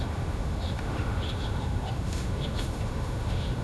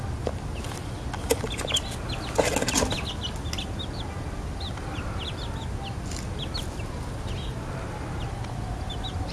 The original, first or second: second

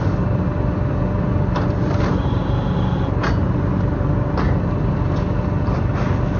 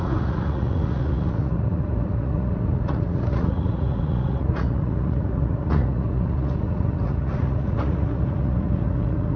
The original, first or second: first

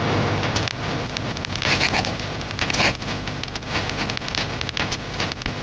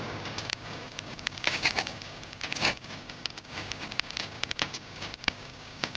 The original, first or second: first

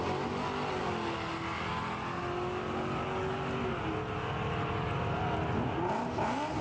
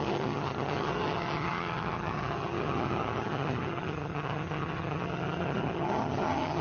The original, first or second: first